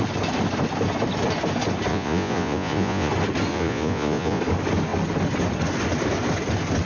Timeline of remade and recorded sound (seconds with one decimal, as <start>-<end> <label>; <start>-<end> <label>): 0.0-1.9 recorded; 1.9-3.1 remade; 3.1-3.5 recorded; 3.5-4.4 remade; 4.4-6.9 recorded